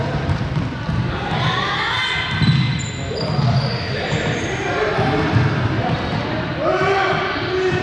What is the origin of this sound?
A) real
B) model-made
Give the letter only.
A